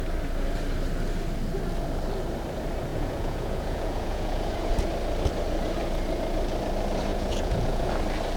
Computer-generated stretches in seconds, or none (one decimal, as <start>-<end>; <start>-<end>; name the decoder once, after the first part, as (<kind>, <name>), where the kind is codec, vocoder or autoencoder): 2.9-4.7 (vocoder, Vocos); 7.1-7.9